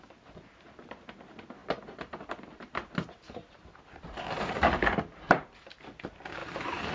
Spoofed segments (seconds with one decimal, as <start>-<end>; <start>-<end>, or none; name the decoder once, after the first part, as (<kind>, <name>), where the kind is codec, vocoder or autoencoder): 1.6-5.7 (vocoder, BigVGAN v2); 6.4-6.9